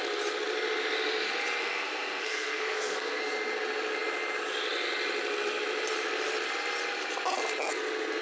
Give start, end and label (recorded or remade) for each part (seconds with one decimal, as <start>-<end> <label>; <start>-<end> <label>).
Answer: 0.0-1.6 recorded; 1.6-3.2 remade; 3.2-8.2 recorded